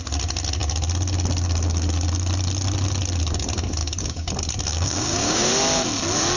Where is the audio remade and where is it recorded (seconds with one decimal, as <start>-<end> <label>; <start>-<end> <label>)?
0.0-3.8 recorded; 3.8-4.3 remade; 4.3-4.7 recorded; 4.7-5.5 remade; 5.5-6.4 recorded